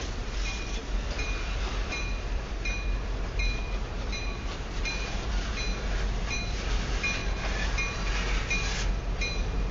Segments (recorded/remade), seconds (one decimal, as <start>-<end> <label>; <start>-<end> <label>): 0.0-7.2 remade; 7.2-9.1 recorded; 9.1-9.7 remade